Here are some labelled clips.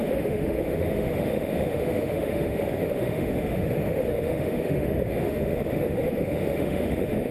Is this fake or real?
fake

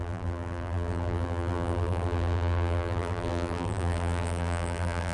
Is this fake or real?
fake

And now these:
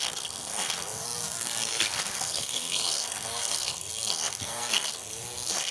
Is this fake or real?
fake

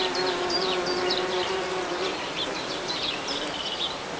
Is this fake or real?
fake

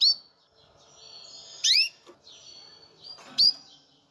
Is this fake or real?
real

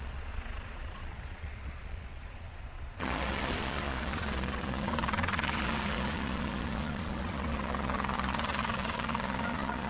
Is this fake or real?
fake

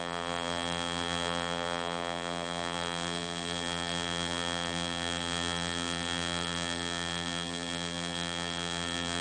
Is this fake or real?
fake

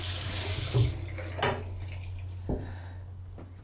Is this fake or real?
real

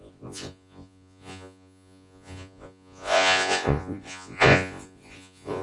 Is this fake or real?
fake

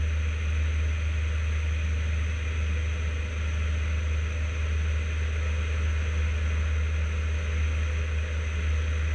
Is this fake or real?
real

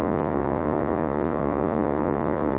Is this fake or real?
fake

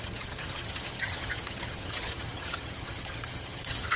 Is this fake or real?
fake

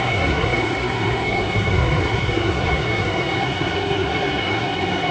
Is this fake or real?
fake